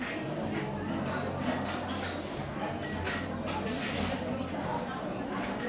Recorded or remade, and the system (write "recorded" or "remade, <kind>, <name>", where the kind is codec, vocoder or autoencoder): recorded